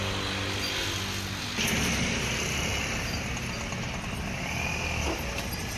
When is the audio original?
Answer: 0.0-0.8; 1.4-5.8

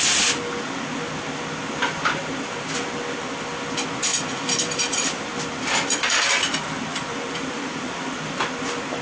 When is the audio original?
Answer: 0.0-4.1; 8.2-9.0

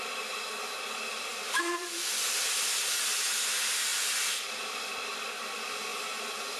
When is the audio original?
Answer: 0.0-1.3; 2.4-3.9; 4.9-6.6

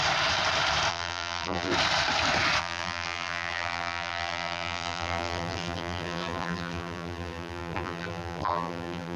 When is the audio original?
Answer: 0.0-0.9; 1.7-2.6

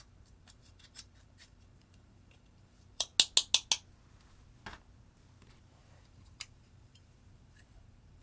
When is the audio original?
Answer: 3.1-5.6

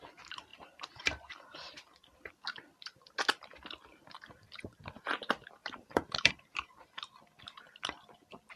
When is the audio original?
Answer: 0.0-0.5; 2.3-3.9; 4.8-5.6; 6.3-8.6

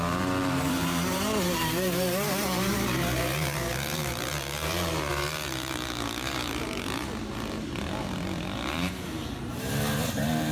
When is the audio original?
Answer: none